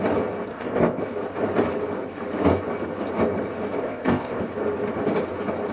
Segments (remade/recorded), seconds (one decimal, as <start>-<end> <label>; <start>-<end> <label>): 0.0-0.5 recorded; 0.5-1.0 remade; 1.0-3.8 recorded; 3.8-4.4 remade; 4.4-5.7 recorded